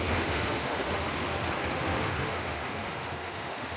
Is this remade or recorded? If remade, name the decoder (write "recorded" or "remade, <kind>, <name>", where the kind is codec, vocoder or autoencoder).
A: remade, autoencoder, DAC-VAE